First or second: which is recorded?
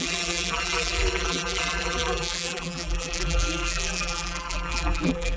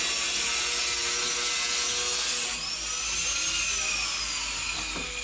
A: second